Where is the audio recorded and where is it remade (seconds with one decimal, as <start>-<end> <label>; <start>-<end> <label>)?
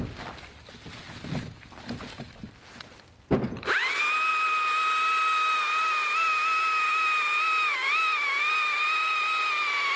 0.0-10.0 recorded